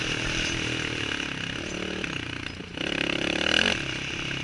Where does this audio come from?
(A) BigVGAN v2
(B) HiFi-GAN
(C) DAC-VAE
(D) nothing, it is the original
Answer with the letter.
D